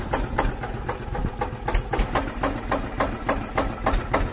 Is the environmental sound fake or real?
real